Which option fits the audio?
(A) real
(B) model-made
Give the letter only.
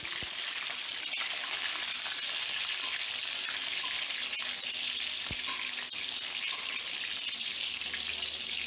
A